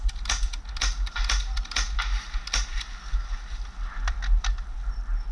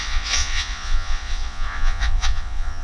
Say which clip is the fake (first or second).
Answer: second